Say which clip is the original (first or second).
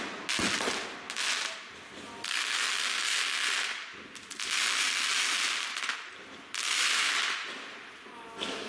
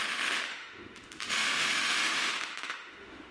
first